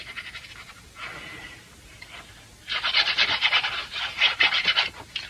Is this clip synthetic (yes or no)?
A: no